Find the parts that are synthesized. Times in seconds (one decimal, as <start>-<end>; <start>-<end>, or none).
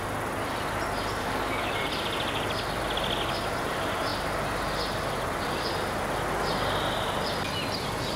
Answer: 1.2-1.7